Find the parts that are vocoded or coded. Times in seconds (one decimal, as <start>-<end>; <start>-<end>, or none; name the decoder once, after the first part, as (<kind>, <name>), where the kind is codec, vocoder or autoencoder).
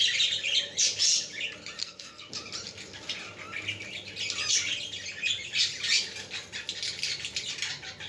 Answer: 1.8-2.3 (codec, SNAC)